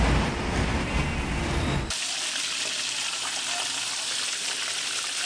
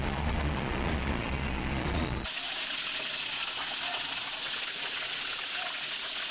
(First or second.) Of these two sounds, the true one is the first